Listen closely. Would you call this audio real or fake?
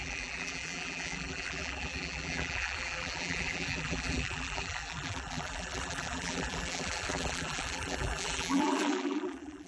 fake